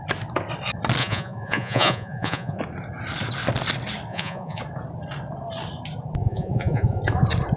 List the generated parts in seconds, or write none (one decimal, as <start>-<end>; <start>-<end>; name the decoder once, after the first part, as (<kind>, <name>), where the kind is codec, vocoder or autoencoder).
1.0-2.6 (vocoder, Vocos); 4.1-4.6; 6.2-7.0